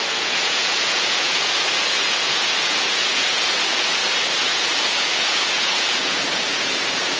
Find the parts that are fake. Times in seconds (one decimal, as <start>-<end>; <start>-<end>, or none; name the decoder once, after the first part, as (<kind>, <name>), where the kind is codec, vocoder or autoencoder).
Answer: 0.0-7.2 (vocoder, Vocos)